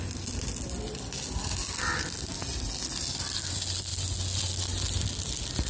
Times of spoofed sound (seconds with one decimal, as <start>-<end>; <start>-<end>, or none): none